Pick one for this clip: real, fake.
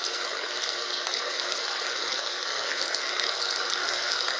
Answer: fake